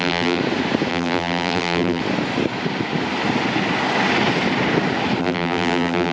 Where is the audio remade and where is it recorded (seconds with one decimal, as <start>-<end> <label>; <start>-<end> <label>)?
0.0-0.4 remade; 0.4-0.9 recorded; 0.9-2.0 remade; 2.0-5.2 recorded; 5.2-6.1 remade